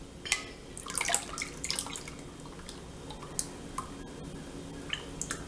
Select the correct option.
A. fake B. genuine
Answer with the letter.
B